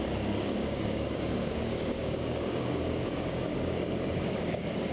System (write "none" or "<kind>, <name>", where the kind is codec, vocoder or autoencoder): codec, DAC